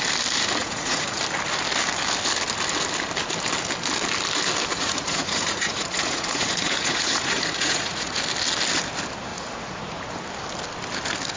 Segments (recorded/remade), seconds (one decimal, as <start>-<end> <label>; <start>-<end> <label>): 0.0-0.6 recorded; 0.6-1.2 remade; 1.2-4.7 recorded; 4.7-8.2 remade; 8.2-9.3 recorded; 9.3-10.1 remade; 10.1-11.4 recorded